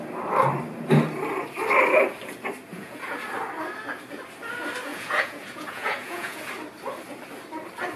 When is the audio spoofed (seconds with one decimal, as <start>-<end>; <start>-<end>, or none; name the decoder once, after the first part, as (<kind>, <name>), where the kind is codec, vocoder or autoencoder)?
2.7-3.2 (vocoder, Vocos); 4.9-6.4